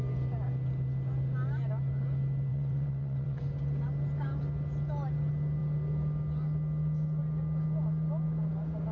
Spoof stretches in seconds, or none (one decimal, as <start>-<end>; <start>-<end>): 2.5-3.4